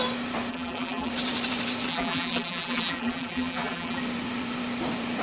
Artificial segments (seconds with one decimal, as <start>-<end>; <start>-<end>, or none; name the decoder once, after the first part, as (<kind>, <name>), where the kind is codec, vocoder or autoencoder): 0.5-1.1 (vocoder, BigVGAN v2); 1.9-4.0